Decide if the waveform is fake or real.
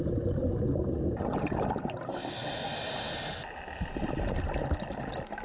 real